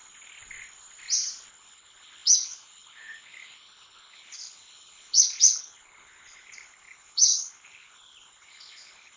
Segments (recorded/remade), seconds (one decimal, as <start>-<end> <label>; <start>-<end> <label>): 0.0-1.5 recorded; 1.5-9.2 remade